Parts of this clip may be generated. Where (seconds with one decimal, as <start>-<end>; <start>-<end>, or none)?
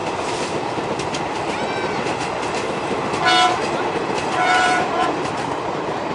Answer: 3.7-6.1